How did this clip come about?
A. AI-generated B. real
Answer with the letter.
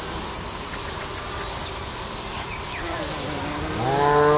B